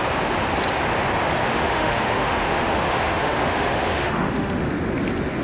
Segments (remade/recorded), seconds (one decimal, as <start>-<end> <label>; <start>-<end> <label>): 0.0-1.5 recorded; 1.5-4.7 remade; 4.7-5.4 recorded